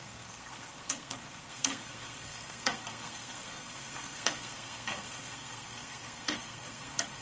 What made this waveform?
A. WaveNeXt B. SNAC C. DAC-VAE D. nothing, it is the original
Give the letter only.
B